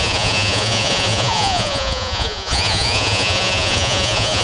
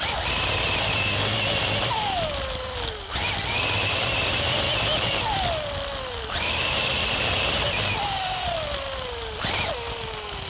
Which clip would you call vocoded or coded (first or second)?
first